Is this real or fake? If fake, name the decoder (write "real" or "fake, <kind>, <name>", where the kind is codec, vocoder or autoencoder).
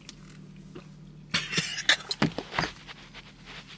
real